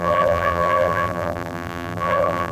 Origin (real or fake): fake